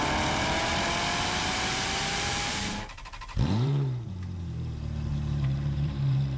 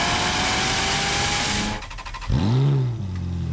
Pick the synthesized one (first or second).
first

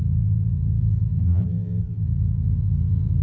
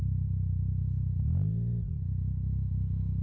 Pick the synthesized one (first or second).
first